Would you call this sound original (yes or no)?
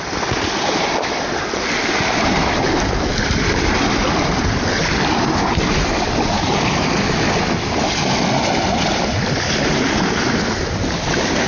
yes